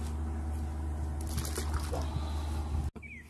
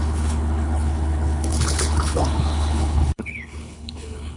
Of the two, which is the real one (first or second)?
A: first